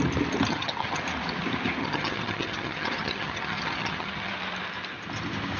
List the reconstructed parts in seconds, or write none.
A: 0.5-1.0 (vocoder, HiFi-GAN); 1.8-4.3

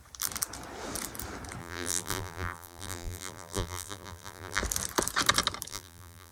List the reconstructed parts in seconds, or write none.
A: 1.6-4.6 (vocoder, BigVGAN v2); 5.7-6.3

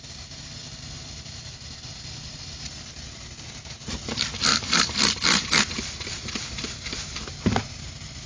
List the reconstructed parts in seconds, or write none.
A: 4.5-7.3 (vocoder, BigVGAN v2)

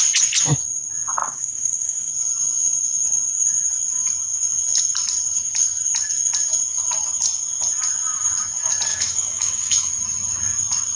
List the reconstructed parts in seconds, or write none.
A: 1.2-2.1 (autoencoder, DAC-VAE); 8.9-9.9

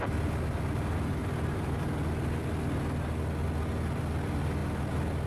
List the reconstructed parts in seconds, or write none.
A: 1.2-1.8 (vocoder, BigVGAN v2)

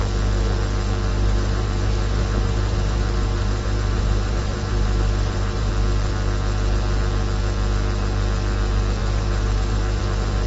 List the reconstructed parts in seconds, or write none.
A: 1.1-5.7 (vocoder, BigVGAN v2); 9.0-10.0

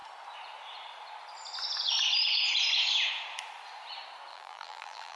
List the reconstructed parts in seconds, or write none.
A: 4.3-5.2 (vocoder, BigVGAN v2)

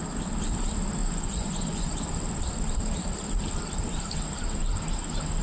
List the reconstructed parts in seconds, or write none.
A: 1.0-1.9 (vocoder, Vocos)